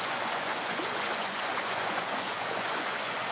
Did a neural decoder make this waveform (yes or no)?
yes